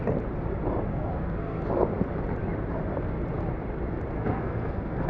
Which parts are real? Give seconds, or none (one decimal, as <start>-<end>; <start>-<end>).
0.0-0.9; 1.7-4.1